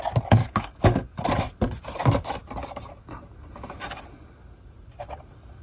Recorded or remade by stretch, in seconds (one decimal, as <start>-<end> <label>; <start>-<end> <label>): 0.0-0.4 recorded; 0.4-1.2 remade; 1.2-5.6 recorded